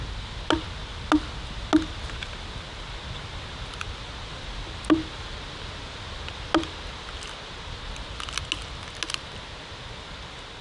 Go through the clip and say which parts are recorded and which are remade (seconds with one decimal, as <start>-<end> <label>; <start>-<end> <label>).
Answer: 0.0-10.6 recorded